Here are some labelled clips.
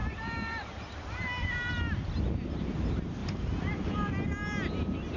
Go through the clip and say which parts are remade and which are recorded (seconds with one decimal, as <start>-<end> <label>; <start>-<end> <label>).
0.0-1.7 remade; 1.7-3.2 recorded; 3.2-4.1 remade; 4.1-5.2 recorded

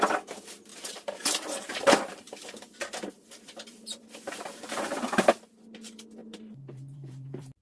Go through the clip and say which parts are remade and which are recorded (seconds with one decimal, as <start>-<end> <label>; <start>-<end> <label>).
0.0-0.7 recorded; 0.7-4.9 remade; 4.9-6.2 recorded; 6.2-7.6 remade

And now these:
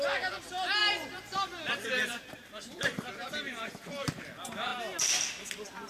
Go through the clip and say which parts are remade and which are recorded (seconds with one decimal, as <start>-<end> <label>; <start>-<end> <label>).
0.0-0.8 recorded; 0.8-4.3 remade; 4.3-5.9 recorded

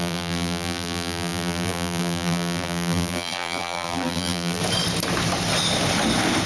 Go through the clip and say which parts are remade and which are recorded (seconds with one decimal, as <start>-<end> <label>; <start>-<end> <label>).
0.0-4.6 remade; 4.6-6.5 recorded